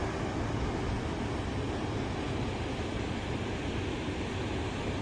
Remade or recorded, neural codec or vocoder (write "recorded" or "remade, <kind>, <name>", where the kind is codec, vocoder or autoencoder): recorded